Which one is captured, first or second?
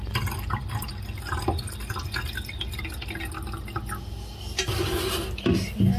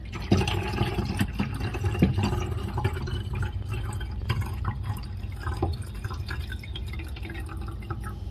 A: first